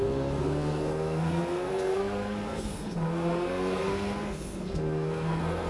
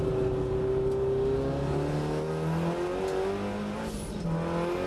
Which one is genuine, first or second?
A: second